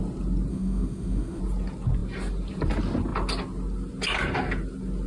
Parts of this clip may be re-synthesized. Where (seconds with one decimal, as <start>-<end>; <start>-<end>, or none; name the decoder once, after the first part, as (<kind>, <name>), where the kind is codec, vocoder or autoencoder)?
0.5-1.4 (autoencoder, DAC-VAE)